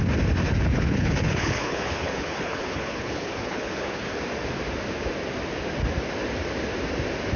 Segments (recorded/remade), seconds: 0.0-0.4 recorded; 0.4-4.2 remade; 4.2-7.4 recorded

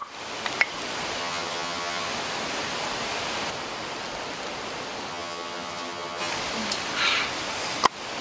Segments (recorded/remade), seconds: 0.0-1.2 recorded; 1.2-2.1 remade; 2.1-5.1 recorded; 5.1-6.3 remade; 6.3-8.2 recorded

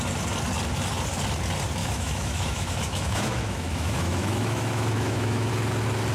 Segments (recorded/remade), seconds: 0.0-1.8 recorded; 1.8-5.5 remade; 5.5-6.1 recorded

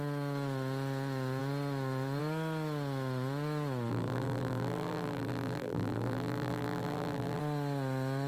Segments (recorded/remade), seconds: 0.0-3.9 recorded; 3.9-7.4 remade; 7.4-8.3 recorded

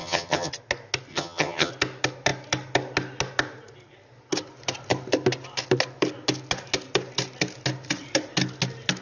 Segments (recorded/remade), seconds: 0.0-0.5 remade; 0.5-1.1 recorded; 1.1-1.7 remade; 1.7-9.0 recorded